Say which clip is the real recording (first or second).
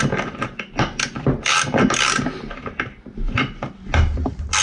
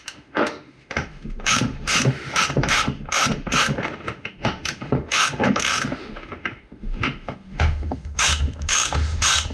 first